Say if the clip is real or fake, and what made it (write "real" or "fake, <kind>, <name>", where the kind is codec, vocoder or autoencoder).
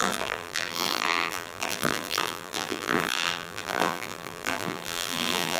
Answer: fake, vocoder, BigVGAN v2